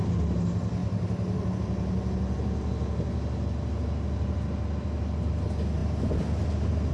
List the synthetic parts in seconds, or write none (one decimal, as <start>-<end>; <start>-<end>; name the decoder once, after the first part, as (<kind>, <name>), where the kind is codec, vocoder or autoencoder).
none